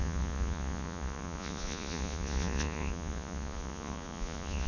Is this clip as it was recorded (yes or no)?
no